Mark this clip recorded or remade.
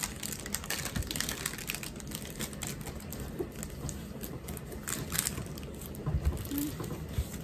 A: recorded